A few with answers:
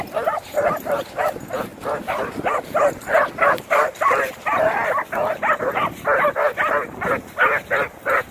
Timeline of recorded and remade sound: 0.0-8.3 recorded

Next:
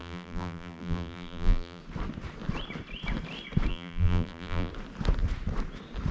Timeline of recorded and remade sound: 0.0-1.8 remade; 1.8-3.7 recorded; 3.7-4.7 remade; 4.7-6.1 recorded

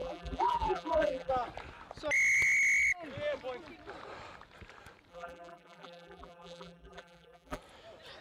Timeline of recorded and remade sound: 0.0-1.3 remade; 1.3-5.1 recorded; 5.1-7.6 remade; 7.6-8.2 recorded

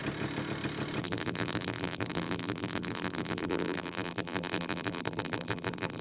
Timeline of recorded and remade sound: 0.0-1.0 recorded; 1.0-6.0 remade

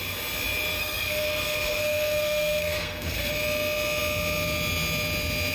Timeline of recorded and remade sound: 0.0-0.8 recorded; 0.8-3.3 remade; 3.3-5.5 recorded